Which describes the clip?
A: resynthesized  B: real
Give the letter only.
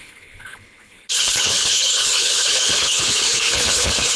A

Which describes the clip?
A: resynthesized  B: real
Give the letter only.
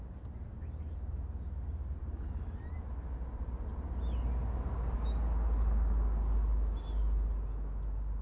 B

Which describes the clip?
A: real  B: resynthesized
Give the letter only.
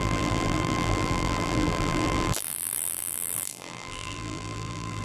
B